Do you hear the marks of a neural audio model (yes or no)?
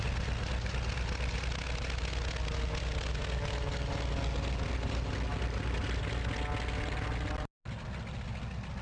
no